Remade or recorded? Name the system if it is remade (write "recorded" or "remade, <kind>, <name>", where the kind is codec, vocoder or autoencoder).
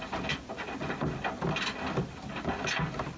recorded